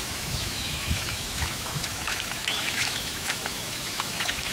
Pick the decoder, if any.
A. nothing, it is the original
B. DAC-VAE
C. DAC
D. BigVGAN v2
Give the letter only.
B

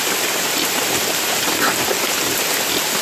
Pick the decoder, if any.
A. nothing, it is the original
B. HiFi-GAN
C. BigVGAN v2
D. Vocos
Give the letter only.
A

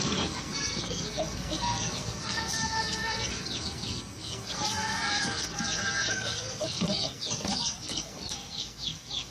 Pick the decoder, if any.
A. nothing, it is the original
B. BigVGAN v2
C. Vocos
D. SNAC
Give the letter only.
D